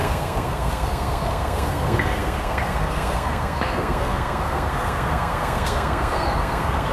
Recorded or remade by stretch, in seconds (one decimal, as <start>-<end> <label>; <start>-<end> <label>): 0.0-6.9 remade